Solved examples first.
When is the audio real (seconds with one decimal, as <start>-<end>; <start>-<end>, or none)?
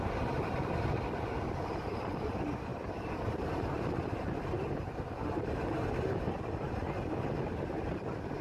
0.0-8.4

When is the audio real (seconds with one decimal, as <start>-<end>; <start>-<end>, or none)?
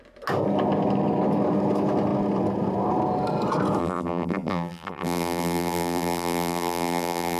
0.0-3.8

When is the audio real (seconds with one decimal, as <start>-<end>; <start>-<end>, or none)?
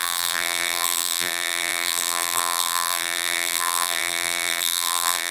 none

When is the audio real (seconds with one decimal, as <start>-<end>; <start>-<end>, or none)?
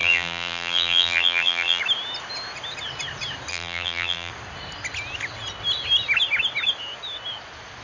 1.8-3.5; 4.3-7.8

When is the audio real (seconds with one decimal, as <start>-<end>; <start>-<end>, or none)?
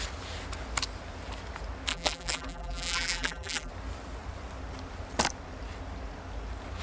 0.0-1.9; 3.7-6.8